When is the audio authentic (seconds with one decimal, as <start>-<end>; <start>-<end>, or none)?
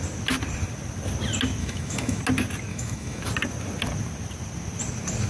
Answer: 0.0-1.6; 2.2-2.7; 3.2-5.3